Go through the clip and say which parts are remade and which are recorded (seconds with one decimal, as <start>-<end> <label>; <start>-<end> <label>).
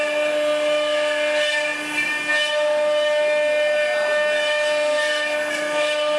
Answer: 0.0-6.2 recorded